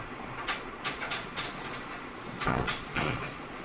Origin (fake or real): fake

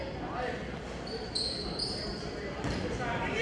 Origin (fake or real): real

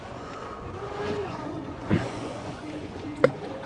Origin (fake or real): fake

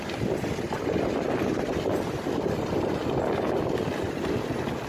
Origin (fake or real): real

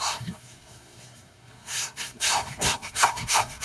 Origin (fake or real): fake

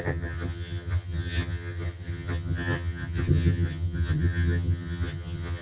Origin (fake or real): fake